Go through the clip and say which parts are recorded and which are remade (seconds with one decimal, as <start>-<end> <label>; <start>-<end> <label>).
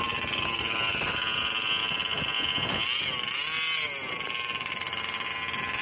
0.0-5.8 recorded